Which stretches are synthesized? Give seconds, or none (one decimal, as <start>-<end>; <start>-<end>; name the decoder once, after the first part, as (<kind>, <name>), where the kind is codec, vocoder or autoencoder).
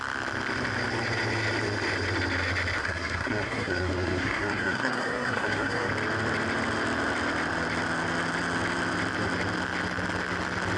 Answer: 2.8-5.9 (codec, SNAC)